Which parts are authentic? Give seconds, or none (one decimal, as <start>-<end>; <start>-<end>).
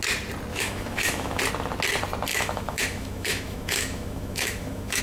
0.0-0.5; 1.4-2.3